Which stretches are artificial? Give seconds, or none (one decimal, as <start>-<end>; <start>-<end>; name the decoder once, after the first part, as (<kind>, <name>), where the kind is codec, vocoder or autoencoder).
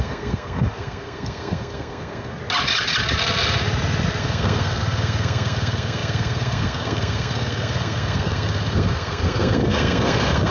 0.0-2.4 (codec, SNAC); 4.2-10.5